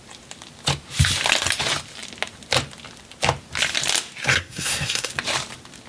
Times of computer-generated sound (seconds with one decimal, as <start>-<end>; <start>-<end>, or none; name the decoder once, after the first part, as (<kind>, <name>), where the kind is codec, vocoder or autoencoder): 4.2-5.1 (codec, SNAC)